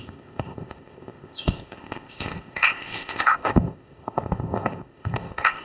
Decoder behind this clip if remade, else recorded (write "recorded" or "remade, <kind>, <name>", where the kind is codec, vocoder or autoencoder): remade, codec, ZipCodec